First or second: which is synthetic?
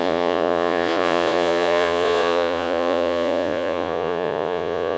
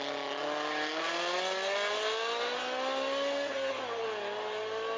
first